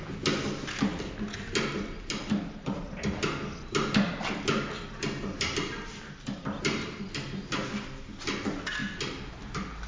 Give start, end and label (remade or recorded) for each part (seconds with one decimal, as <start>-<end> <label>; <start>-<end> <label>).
0.0-9.9 recorded